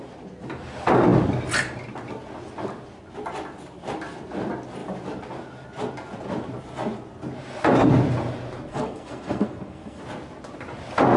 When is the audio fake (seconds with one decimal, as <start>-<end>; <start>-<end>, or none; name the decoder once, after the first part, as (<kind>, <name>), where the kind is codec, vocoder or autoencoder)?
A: 8.7-10.0 (codec, SNAC)